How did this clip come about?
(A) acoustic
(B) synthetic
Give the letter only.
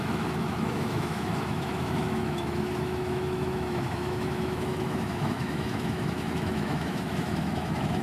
B